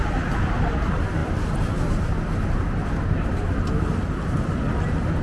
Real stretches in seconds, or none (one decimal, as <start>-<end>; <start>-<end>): 0.0-5.2